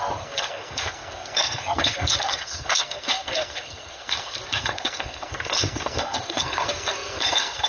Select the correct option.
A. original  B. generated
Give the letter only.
B